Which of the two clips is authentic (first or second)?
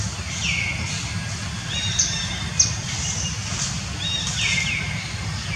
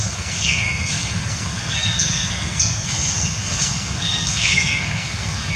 first